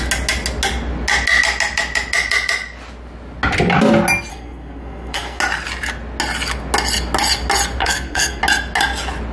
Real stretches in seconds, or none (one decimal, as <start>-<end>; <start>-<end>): 0.0-4.3; 5.4-7.8; 8.4-9.3